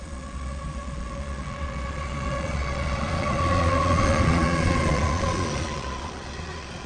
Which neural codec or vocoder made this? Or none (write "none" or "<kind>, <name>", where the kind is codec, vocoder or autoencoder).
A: vocoder, Vocos